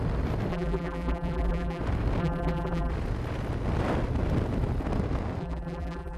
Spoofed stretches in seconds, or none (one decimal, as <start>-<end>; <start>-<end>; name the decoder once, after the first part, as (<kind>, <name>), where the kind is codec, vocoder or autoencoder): 0.5-1.8 (vocoder, BigVGAN v2); 2.2-2.9; 5.4-6.2